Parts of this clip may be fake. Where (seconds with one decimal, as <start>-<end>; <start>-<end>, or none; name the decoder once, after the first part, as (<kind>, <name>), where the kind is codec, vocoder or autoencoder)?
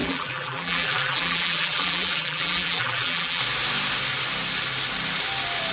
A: 0.0-3.4 (vocoder, BigVGAN v2)